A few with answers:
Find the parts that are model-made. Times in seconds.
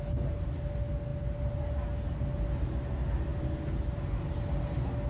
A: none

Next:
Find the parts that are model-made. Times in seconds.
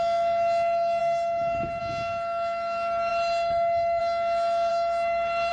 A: 1.0-1.8 (autoencoder, DAC-VAE); 3.1-4.0; 4.7-5.5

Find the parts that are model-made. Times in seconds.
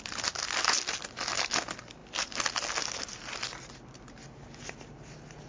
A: none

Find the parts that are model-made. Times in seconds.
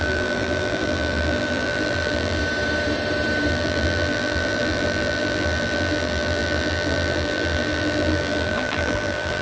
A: 0.0-2.4 (vocoder, BigVGAN v2); 3.5-9.4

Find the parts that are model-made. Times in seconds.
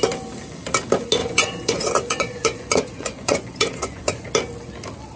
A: 1.2-4.3 (vocoder, Vocos)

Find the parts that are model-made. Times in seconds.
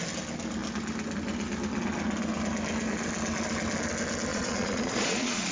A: 4.3-5.5 (vocoder, Vocos)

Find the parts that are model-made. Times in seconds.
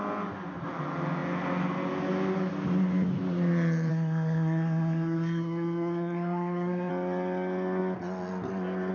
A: 3.9-6.9 (codec, SNAC)